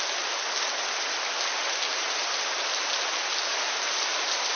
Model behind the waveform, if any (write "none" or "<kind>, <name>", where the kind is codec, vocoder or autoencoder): none